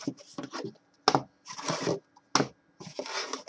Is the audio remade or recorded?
recorded